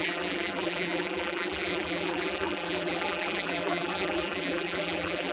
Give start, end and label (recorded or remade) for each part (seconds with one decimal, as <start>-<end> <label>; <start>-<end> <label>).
0.0-5.3 remade